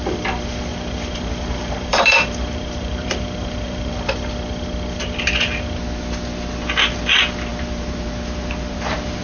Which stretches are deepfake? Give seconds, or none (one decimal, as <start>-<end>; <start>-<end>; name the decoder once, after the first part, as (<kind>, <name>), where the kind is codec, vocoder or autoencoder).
0.7-3.9 (vocoder, BigVGAN v2); 7.5-9.2